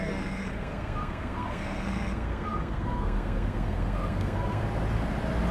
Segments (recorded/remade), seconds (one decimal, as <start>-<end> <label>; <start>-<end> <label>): 0.0-4.6 remade; 4.6-5.5 recorded